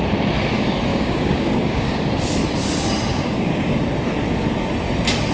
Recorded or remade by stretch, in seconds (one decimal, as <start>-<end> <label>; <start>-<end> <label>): 0.0-0.9 recorded; 0.9-2.0 remade; 2.0-3.1 recorded; 3.1-3.8 remade; 3.8-5.3 recorded